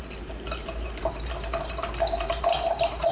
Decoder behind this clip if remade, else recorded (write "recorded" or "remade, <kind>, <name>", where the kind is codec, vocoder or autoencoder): remade, vocoder, BigVGAN v2